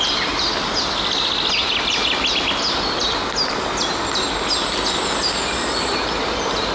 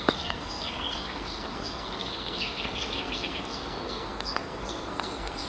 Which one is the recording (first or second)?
first